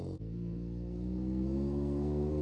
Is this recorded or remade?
remade